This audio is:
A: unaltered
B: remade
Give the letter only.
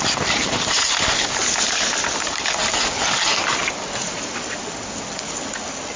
A